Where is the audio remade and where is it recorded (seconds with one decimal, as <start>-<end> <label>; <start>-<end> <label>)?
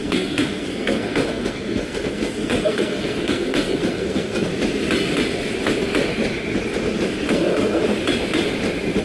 0.0-4.5 remade; 4.5-7.3 recorded; 7.3-7.8 remade; 7.8-9.0 recorded